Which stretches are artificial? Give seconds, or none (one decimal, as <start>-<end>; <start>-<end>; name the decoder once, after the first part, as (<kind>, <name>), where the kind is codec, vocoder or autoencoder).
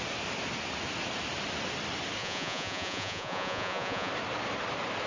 2.2-4.1 (vocoder, Vocos)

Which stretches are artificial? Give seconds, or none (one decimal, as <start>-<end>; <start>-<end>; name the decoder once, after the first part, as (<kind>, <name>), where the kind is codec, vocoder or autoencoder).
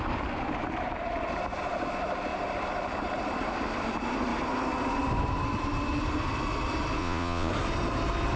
7.0-7.5 (vocoder, Vocos)